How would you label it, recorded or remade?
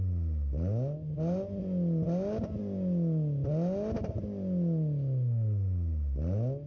recorded